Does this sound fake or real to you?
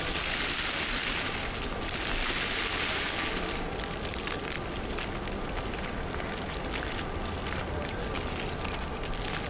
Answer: real